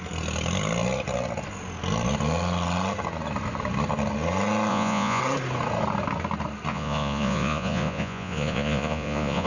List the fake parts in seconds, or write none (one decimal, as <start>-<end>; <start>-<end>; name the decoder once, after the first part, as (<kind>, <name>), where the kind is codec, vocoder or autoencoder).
4.7-5.2 (vocoder, Vocos); 6.7-9.5